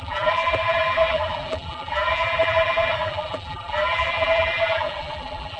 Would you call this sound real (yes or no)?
no